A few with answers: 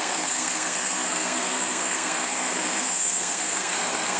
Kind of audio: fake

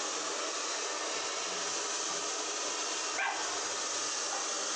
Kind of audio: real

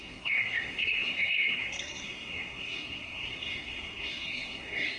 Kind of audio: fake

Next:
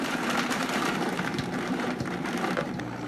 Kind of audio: fake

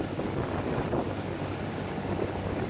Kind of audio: real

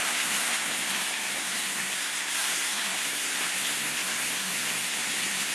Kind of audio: fake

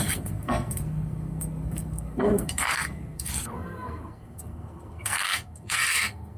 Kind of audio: fake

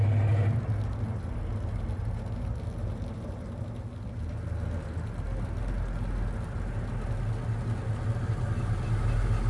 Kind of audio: real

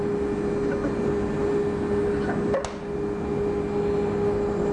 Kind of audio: real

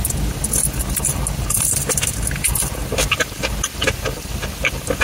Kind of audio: real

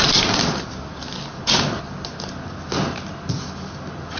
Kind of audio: real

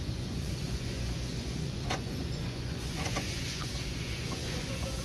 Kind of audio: fake